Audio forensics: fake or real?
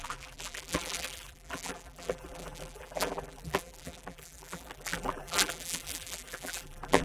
fake